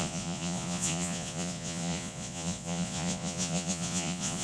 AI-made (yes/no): yes